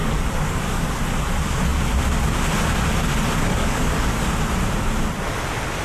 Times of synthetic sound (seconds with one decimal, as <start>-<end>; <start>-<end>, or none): 0.0-1.0; 3.4-4.2